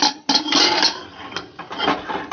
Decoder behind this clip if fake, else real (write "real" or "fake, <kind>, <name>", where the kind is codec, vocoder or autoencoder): real